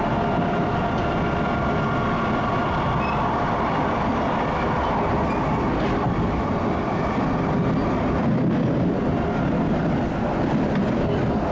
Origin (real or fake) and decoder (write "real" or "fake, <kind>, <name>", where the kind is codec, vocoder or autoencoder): real